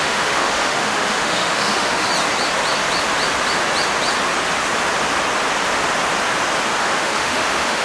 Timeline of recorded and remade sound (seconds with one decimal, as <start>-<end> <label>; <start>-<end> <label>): 0.0-2.1 remade; 2.1-6.8 recorded; 6.8-7.8 remade